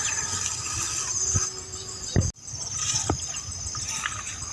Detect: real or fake real